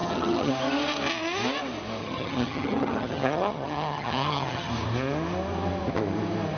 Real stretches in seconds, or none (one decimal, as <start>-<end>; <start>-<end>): 0.5-2.0; 4.7-6.6